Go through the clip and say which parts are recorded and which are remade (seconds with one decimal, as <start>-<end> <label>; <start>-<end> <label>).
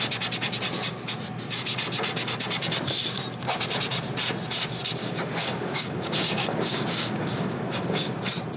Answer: 0.0-5.0 recorded; 5.0-8.2 remade; 8.2-8.6 recorded